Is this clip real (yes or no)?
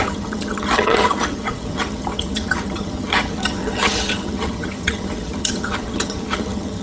no